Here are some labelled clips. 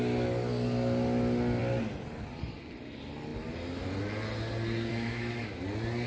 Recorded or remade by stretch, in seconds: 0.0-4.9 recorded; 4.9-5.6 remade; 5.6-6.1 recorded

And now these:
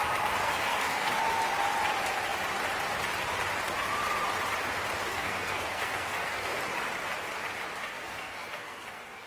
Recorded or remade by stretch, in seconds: 0.0-0.4 recorded; 0.4-1.2 remade; 1.2-5.1 recorded; 5.1-6.6 remade; 6.6-7.8 recorded; 7.8-9.3 remade

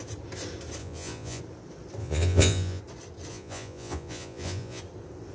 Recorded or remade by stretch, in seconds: 0.0-0.8 recorded; 0.8-1.4 remade; 1.4-2.0 recorded; 2.0-2.8 remade; 2.8-3.3 recorded; 3.3-4.8 remade; 4.8-5.3 recorded

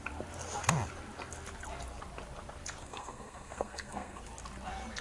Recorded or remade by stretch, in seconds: 0.0-2.8 recorded; 2.8-4.2 remade; 4.2-5.0 recorded